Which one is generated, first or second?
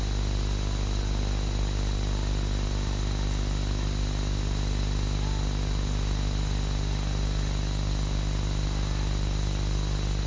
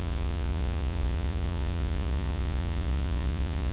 second